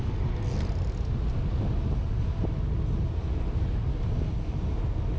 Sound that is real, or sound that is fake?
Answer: real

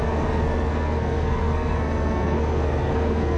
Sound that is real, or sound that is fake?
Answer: fake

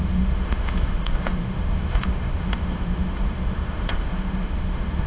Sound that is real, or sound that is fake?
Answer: fake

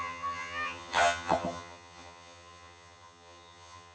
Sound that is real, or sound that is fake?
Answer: fake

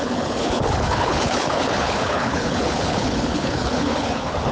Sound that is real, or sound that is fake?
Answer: fake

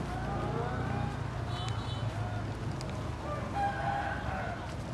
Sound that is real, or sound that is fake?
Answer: real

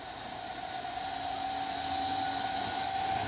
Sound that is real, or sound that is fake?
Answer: real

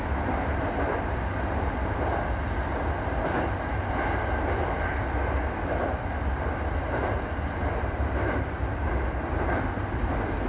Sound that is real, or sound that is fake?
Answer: real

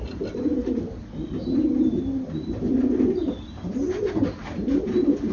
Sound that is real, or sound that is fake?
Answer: real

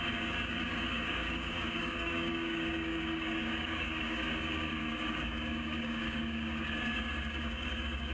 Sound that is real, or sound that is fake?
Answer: fake